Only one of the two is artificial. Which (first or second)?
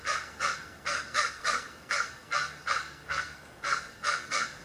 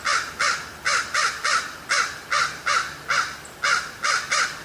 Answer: first